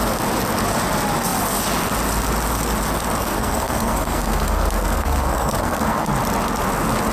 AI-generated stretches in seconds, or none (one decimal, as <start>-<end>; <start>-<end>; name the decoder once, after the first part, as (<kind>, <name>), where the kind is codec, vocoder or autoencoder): 3.2-6.1 (codec, SNAC)